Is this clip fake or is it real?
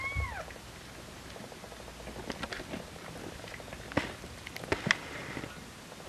real